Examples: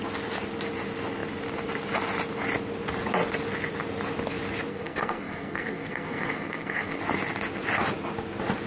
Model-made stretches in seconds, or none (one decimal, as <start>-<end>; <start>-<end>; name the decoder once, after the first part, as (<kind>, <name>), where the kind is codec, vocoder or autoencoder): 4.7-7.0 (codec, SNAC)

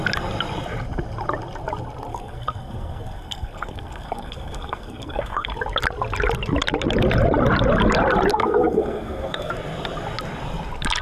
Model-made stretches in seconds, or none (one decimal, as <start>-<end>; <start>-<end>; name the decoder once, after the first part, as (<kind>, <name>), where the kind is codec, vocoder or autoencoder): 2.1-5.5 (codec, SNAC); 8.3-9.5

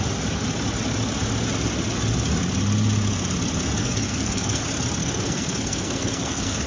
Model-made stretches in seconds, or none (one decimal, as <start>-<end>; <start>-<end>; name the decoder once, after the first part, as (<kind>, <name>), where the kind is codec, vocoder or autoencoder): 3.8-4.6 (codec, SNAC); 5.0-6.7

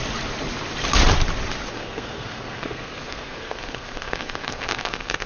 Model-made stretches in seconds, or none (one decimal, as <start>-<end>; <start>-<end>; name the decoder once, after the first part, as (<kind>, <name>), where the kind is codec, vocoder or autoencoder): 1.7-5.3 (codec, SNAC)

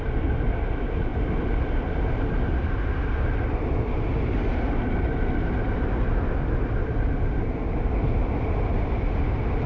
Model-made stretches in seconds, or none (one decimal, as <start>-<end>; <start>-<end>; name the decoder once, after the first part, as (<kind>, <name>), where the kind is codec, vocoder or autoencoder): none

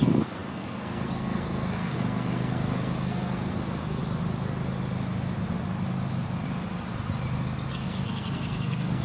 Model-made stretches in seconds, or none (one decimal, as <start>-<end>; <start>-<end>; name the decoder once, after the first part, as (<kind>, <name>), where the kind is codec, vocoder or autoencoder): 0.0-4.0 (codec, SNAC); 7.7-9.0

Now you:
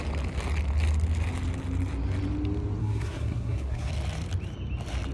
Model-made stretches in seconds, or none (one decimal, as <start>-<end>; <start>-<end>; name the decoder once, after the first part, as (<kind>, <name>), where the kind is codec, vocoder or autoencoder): 2.8-3.9 (codec, SNAC)